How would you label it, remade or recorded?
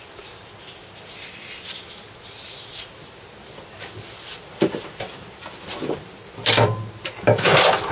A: recorded